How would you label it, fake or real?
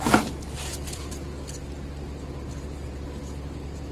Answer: real